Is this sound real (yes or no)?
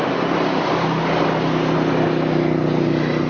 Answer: yes